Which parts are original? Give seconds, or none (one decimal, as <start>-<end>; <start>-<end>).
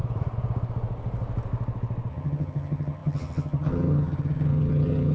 0.0-2.1